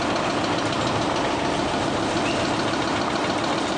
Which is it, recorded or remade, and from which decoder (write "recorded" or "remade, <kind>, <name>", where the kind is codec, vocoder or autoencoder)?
recorded